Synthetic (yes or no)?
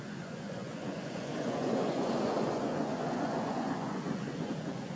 yes